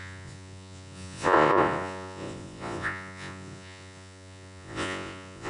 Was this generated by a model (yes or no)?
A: yes